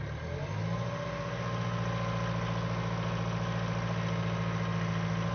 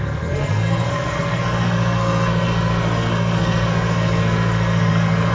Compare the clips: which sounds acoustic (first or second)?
first